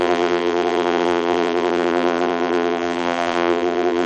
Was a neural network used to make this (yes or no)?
yes